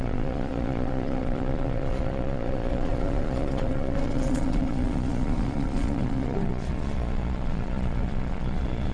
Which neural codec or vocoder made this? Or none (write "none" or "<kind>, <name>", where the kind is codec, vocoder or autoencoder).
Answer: vocoder, Vocos